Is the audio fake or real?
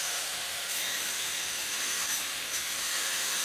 fake